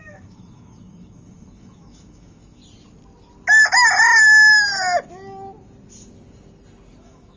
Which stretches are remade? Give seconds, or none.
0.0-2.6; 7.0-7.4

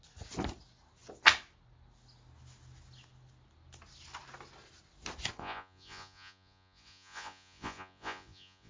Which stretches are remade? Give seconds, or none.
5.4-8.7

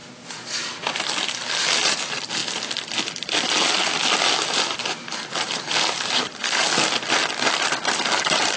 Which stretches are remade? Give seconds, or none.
0.0-1.0

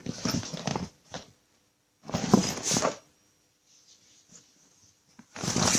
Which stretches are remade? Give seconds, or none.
none

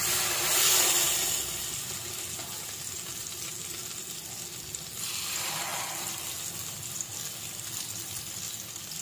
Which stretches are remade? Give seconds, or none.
none

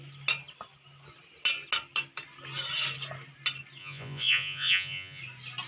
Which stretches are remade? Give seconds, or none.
3.8-5.2